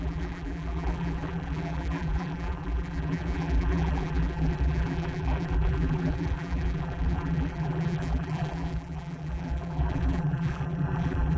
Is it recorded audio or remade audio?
remade